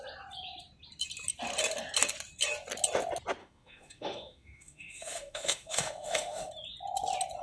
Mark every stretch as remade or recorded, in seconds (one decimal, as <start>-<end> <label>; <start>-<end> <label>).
0.0-3.4 recorded; 3.4-6.5 remade; 6.5-7.4 recorded